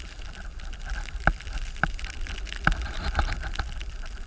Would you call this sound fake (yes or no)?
no